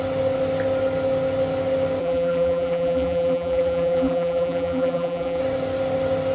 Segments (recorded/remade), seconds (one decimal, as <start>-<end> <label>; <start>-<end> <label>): 0.0-2.0 recorded; 2.0-5.4 remade; 5.4-6.3 recorded